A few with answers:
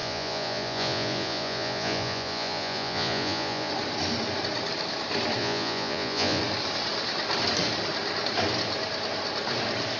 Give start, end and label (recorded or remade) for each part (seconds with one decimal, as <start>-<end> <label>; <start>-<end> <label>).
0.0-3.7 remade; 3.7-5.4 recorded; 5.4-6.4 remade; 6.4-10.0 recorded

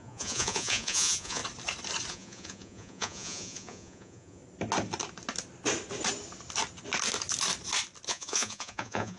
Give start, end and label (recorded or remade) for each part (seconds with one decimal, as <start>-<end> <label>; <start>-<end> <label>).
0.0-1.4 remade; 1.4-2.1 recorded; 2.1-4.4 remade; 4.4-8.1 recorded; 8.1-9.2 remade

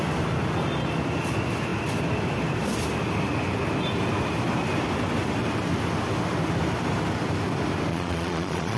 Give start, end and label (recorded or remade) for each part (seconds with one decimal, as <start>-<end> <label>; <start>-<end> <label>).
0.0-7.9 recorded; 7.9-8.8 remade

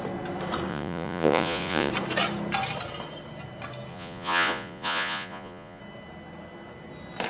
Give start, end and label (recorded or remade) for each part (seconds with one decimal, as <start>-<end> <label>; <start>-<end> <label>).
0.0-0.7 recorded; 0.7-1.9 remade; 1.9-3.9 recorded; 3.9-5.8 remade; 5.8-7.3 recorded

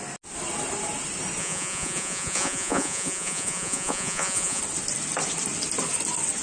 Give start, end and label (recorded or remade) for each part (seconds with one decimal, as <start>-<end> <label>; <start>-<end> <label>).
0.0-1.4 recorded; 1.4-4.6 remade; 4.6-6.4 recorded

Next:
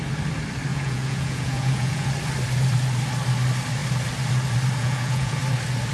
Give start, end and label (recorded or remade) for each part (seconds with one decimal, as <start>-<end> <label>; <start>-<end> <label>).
0.0-0.7 recorded; 0.7-2.1 remade; 2.1-4.8 recorded; 4.8-5.4 remade; 5.4-5.9 recorded